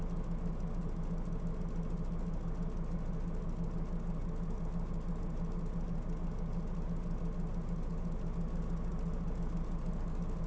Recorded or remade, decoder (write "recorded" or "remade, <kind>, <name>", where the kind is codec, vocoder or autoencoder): recorded